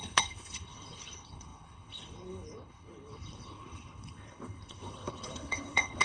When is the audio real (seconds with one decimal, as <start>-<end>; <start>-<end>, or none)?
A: none